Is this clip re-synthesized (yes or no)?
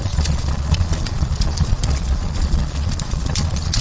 yes